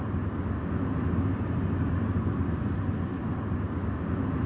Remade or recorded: recorded